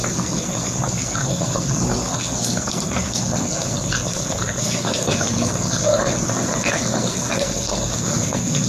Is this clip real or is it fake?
fake